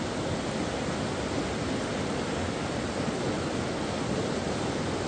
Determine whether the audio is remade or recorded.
recorded